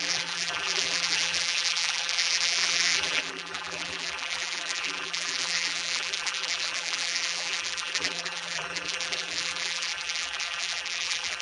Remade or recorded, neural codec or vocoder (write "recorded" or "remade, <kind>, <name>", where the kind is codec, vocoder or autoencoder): remade, vocoder, BigVGAN v2